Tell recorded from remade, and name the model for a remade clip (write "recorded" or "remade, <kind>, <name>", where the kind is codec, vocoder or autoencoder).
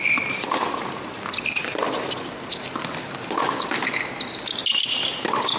recorded